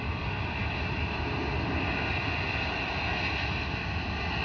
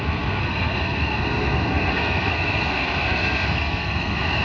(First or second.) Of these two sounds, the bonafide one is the first